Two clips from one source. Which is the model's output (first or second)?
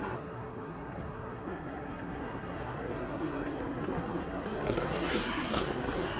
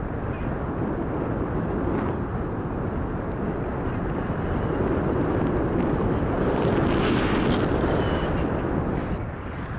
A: first